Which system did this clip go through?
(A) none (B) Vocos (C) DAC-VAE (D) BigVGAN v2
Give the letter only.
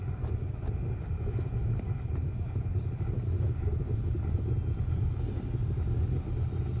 A